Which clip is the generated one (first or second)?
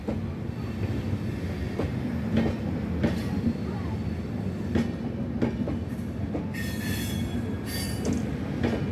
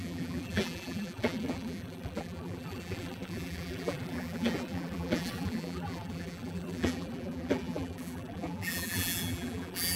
second